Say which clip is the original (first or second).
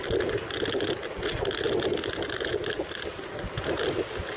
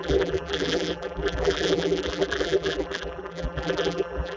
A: first